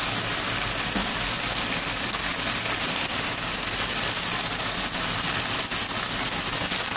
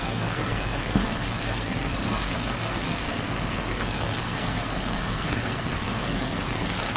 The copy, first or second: second